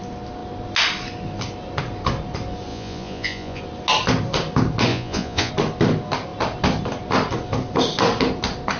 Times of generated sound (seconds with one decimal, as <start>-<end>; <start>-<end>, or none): 2.7-3.6; 4.9-5.5